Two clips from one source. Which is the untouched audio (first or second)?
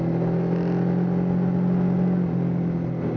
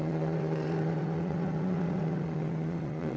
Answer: first